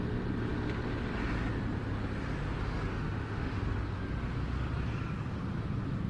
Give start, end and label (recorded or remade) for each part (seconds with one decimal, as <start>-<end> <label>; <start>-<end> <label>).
0.0-2.9 recorded; 2.9-3.6 remade; 3.6-6.1 recorded